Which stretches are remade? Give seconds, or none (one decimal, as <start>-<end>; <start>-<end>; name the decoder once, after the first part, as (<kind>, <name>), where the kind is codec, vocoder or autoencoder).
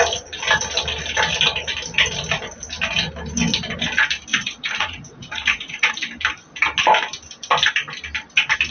4.3-5.9 (vocoder, Vocos)